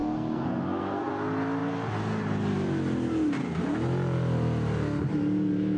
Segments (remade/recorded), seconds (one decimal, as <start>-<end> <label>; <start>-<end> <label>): 0.0-1.1 remade; 1.1-5.8 recorded

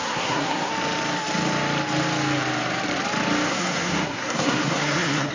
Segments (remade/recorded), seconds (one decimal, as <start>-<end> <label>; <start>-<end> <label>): 0.0-0.7 remade; 0.7-3.5 recorded; 3.5-5.3 remade

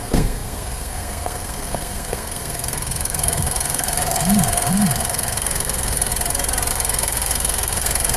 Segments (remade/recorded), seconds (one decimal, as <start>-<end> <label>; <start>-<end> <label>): 0.0-6.1 remade; 6.1-6.7 recorded; 6.7-8.2 remade

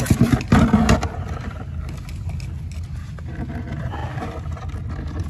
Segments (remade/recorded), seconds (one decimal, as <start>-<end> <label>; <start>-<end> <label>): 0.0-5.3 recorded

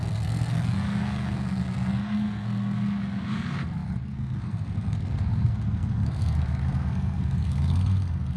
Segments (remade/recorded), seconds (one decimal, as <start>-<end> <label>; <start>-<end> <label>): 0.0-8.4 remade

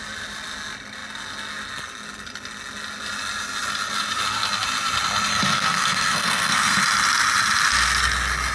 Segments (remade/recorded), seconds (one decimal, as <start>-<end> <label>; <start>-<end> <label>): 0.0-5.3 recorded; 5.3-6.8 remade; 6.8-8.5 recorded